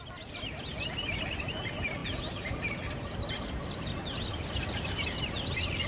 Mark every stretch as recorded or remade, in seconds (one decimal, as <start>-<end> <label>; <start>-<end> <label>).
0.0-5.9 recorded